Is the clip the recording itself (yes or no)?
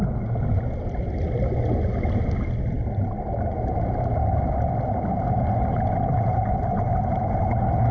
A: yes